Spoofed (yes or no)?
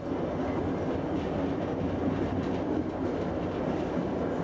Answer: no